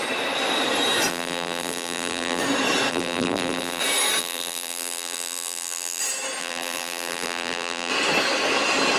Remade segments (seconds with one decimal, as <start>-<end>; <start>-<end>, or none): 1.1-2.4; 2.9-3.8; 4.2-6.0; 6.4-7.9